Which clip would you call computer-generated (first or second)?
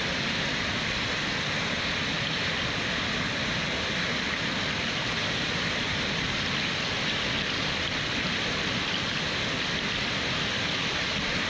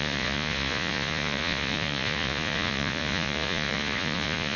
second